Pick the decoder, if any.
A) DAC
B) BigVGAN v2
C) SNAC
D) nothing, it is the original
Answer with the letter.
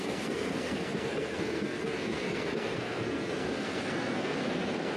C